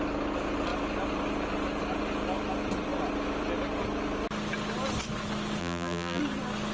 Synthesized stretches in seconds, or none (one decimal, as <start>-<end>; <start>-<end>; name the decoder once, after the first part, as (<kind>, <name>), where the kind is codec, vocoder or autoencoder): 5.6-6.2 (vocoder, BigVGAN v2)